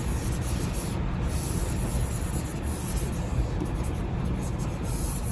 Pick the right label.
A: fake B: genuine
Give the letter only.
B